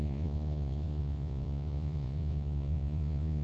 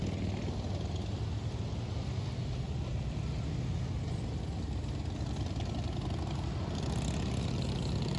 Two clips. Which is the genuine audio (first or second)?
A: second